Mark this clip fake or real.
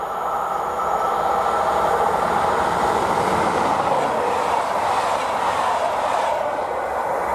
real